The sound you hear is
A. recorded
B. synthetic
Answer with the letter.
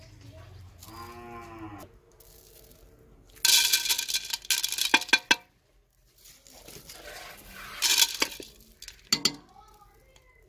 A